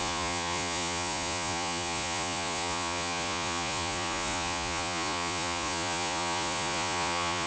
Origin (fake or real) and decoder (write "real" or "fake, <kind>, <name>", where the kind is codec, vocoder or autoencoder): fake, vocoder, Vocos